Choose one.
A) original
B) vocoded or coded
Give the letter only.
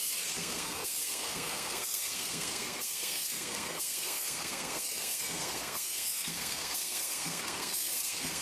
B